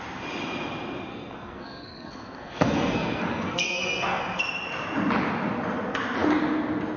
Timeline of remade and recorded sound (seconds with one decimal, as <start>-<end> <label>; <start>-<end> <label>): 0.0-1.1 recorded; 1.1-4.2 remade; 4.2-7.0 recorded

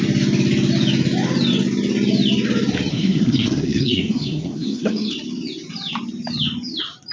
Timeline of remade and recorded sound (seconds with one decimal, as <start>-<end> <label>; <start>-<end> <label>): 0.0-2.9 recorded; 2.9-5.1 remade; 5.1-7.1 recorded

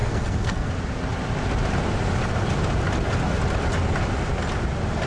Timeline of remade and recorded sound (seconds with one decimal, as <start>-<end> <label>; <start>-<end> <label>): 0.0-0.7 remade; 0.7-5.1 recorded

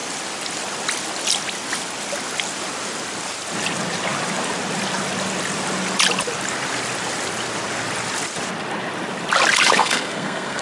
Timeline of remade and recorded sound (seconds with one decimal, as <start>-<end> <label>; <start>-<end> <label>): 0.0-9.8 recorded; 9.8-10.6 remade

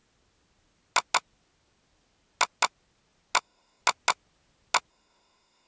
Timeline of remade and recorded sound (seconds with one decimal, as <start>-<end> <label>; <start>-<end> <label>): 0.0-3.4 recorded; 3.4-3.8 remade; 3.8-4.9 recorded; 4.9-5.7 remade

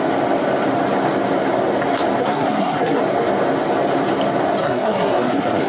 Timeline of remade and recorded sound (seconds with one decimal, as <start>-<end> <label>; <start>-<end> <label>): 0.0-2.2 recorded; 2.2-3.0 remade; 3.0-4.6 recorded; 4.6-5.7 remade

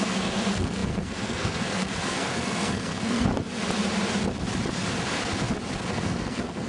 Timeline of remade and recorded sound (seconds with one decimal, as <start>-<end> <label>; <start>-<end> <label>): 0.0-3.3 remade; 3.3-5.9 recorded; 5.9-6.7 remade